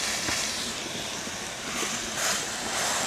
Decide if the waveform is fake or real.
fake